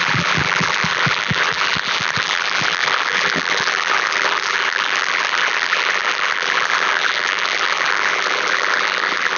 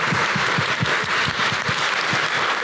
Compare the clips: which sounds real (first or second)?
second